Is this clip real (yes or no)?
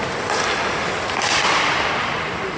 yes